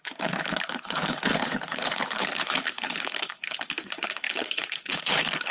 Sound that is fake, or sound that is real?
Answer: fake